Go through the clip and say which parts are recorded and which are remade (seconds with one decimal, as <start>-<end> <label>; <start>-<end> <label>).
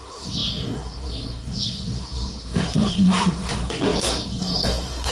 0.0-5.1 remade